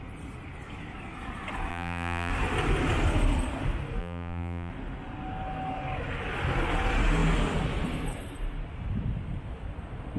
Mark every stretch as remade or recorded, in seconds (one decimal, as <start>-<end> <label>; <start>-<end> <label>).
0.0-1.7 recorded; 1.7-2.3 remade; 2.3-4.0 recorded; 4.0-4.7 remade; 4.7-10.2 recorded